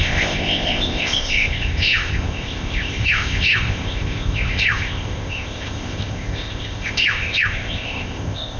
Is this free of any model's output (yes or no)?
no